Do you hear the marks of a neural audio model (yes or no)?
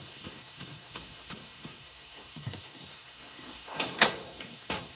yes